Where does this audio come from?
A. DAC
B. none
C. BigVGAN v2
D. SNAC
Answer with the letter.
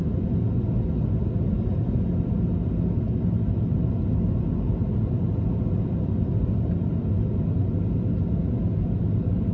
B